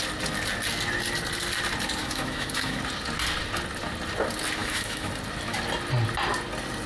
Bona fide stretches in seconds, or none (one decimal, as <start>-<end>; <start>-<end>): 0.0-2.0; 2.8-4.6; 5.1-6.9